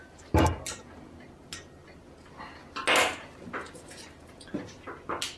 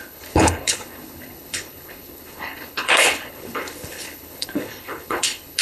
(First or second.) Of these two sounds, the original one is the first